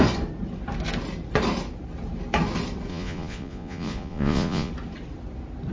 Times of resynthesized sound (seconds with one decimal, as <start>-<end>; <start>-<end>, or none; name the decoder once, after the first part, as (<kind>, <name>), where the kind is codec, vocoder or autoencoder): 2.9-4.7 (vocoder, Vocos)